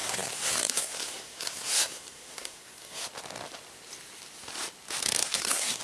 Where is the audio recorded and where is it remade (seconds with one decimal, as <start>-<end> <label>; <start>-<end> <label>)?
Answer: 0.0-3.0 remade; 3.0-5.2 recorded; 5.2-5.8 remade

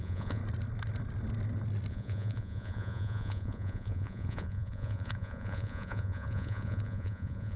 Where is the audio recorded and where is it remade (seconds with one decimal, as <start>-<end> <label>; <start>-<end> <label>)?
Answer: 0.0-0.4 remade; 0.4-1.9 recorded; 1.9-7.6 remade

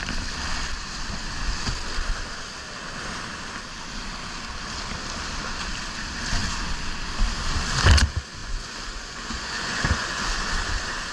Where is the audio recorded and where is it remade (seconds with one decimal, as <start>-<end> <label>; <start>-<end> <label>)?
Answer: 0.0-8.4 recorded; 8.4-10.4 remade; 10.4-11.1 recorded

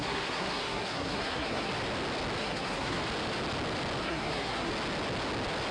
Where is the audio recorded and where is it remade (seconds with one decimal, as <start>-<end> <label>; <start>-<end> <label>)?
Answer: 0.0-1.7 remade; 1.7-2.4 recorded; 2.4-3.0 remade; 3.0-4.0 recorded; 4.0-4.7 remade; 4.7-5.7 recorded

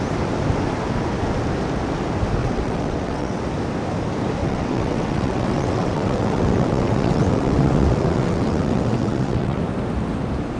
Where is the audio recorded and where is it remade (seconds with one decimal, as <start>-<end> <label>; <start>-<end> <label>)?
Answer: 0.0-2.4 recorded; 2.4-3.4 remade; 3.4-4.4 recorded; 4.4-9.6 remade; 9.6-10.6 recorded

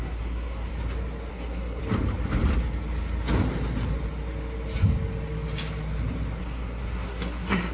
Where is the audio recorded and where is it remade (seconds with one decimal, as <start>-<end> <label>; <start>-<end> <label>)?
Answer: 0.0-0.7 remade; 0.7-1.3 recorded; 1.3-1.8 remade; 1.8-6.4 recorded; 6.4-7.7 remade